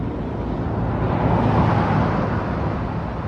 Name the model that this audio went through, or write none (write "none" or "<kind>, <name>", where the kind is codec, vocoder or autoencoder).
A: none